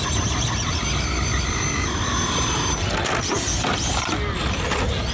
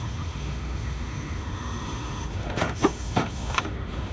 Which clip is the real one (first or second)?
first